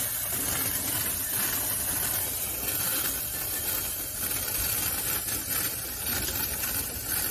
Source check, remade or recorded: recorded